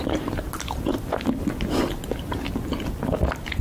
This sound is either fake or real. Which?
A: real